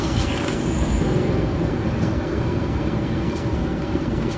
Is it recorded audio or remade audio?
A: remade